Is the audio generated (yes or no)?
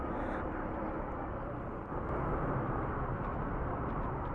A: no